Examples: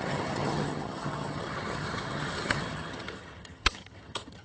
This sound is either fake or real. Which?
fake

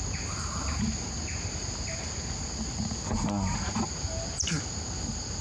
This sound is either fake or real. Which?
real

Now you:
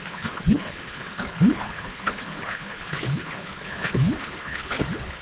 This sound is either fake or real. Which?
fake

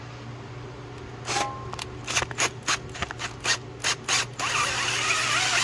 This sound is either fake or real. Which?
real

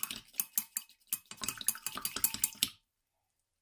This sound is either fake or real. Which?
real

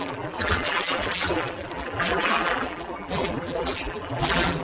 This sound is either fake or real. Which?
fake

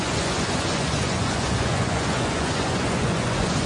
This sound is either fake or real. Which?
fake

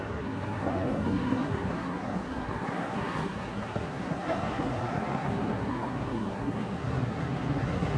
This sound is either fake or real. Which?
fake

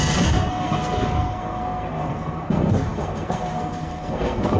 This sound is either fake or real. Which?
fake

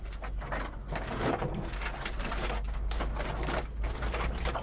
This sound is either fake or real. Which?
real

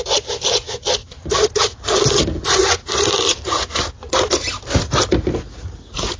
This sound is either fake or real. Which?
real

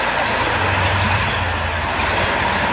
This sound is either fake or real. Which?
real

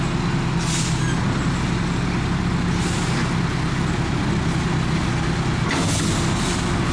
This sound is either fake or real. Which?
real